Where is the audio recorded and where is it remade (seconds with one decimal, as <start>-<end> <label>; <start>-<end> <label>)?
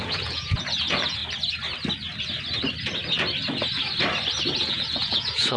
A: 0.0-1.2 remade; 1.2-4.6 recorded; 4.6-5.6 remade